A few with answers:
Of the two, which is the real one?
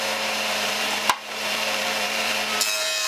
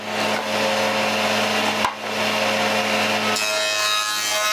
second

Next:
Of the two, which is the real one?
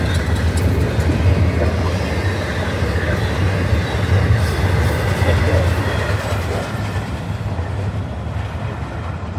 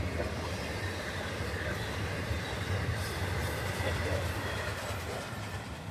first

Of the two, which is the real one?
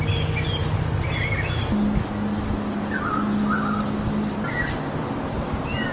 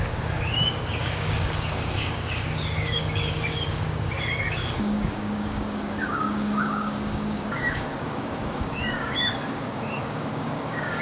first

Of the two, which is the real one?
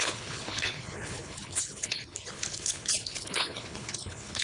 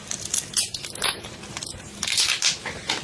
second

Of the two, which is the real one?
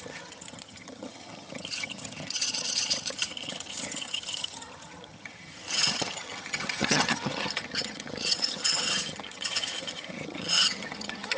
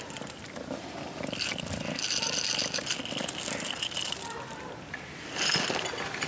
second